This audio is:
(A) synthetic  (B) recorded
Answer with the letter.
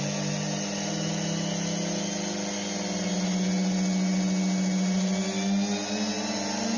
B